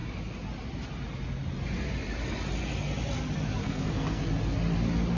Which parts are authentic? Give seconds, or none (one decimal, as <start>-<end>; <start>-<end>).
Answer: 0.0-3.6; 4.2-5.2